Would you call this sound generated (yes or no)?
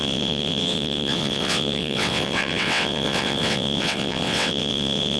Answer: yes